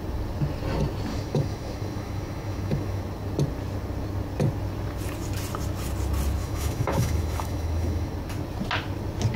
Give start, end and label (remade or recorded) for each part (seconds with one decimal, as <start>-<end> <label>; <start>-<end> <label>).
0.0-1.1 recorded; 1.1-3.0 remade; 3.0-6.4 recorded; 6.4-8.1 remade; 8.1-9.4 recorded